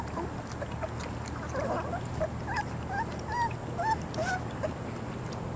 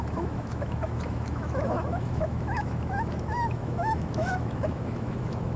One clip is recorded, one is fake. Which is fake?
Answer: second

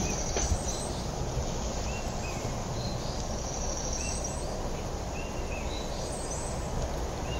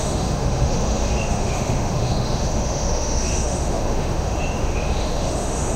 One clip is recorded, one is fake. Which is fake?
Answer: second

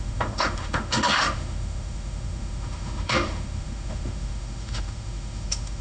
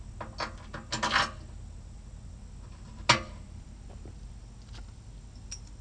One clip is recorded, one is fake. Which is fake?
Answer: first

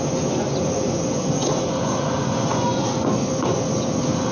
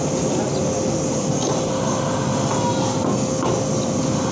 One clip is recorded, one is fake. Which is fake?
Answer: first